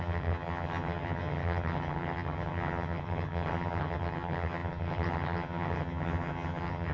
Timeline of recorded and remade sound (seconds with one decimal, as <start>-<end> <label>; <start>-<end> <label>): 0.0-6.9 remade